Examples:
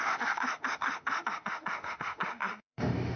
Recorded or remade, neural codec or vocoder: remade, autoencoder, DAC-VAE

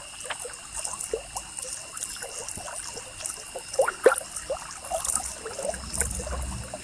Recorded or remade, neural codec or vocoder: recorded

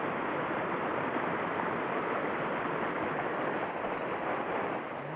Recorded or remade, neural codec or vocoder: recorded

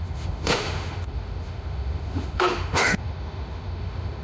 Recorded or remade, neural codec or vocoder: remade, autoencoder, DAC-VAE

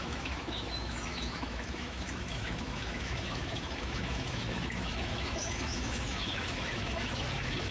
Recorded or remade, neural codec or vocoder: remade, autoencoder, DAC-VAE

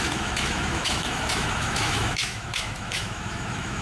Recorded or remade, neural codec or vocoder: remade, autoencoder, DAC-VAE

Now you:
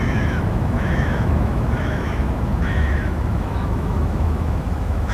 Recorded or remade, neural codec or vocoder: remade, autoencoder, DAC-VAE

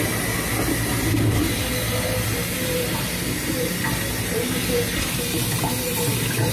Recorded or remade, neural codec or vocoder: recorded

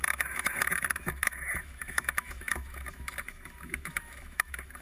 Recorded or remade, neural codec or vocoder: remade, autoencoder, DAC-VAE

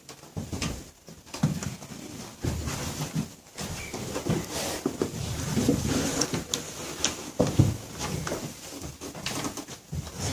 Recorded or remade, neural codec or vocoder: recorded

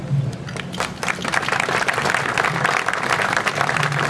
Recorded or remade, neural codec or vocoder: recorded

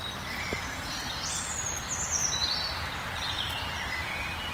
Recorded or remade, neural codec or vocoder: recorded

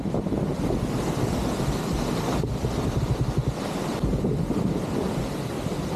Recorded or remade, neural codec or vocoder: recorded